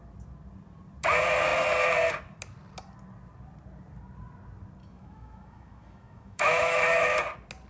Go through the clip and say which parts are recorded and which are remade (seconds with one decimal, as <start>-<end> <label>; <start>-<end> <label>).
0.0-4.8 recorded; 4.8-7.2 remade; 7.2-7.7 recorded